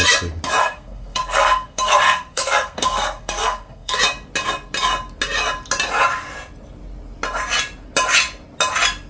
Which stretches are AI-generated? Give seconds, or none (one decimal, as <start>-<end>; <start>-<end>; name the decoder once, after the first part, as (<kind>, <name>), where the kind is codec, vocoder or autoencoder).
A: 0.6-4.0 (codec, SNAC)